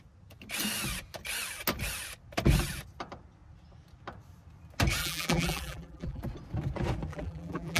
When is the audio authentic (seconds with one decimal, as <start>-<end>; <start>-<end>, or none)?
0.0-5.0; 6.2-7.1